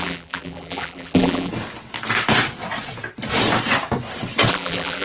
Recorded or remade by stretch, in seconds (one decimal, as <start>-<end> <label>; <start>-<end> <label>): 0.0-1.5 remade; 1.5-4.5 recorded; 4.5-5.0 remade